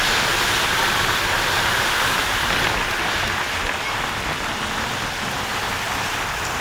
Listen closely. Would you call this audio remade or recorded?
recorded